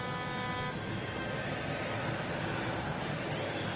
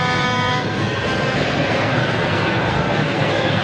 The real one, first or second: first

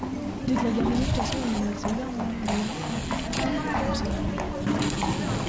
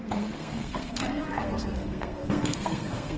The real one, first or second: first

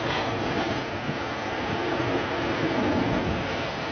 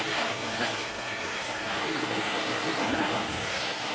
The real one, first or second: first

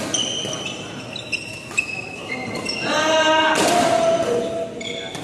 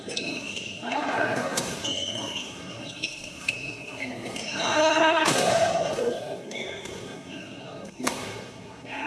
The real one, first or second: first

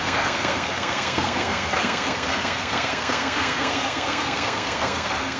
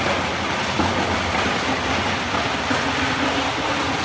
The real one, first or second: second